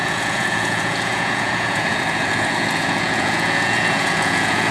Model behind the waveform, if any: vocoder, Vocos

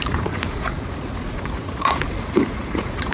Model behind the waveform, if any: vocoder, Vocos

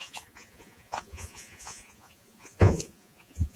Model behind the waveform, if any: vocoder, Vocos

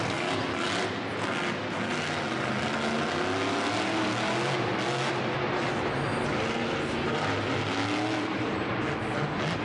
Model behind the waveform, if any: none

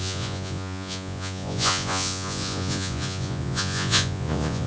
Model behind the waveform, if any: vocoder, Vocos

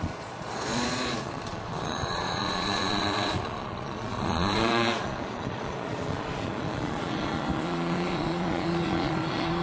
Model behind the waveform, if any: vocoder, Vocos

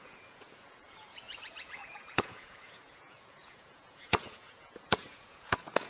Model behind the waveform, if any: vocoder, Vocos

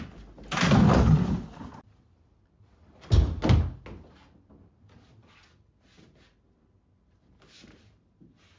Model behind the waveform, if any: none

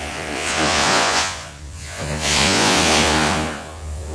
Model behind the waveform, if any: vocoder, Vocos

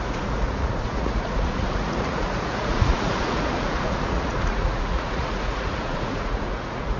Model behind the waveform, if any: vocoder, Vocos